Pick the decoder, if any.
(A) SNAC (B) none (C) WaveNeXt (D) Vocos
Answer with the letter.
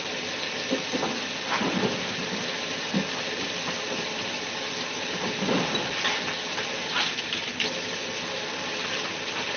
B